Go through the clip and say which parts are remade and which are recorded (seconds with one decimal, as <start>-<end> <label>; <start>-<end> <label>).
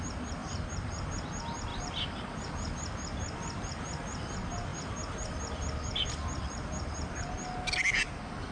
0.0-1.7 recorded; 1.7-2.3 remade; 2.3-8.5 recorded